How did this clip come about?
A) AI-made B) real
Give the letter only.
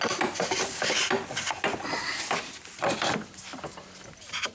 B